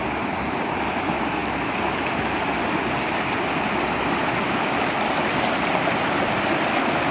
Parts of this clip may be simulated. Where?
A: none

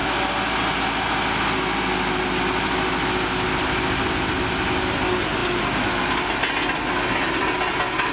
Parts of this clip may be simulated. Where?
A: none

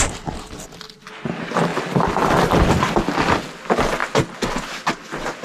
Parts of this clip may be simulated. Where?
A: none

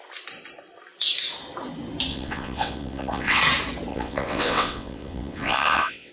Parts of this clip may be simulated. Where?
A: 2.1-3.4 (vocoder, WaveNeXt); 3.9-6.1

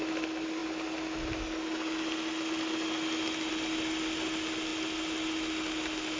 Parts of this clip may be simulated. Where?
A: none

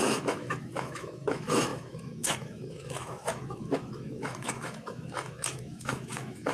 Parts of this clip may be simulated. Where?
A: 0.0-6.5 (autoencoder, DAC-VAE)

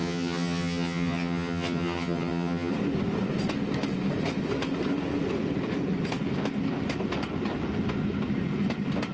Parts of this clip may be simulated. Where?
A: 0.0-2.7 (vocoder, HiFi-GAN)

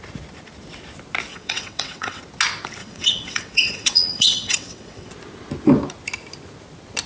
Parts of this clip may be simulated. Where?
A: 1.3-2.2 (vocoder, WaveNeXt); 2.8-5.1